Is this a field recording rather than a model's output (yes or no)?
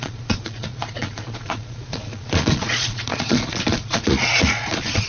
no